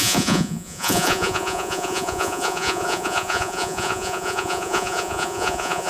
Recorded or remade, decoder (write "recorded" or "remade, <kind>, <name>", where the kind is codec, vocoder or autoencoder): remade, vocoder, Vocos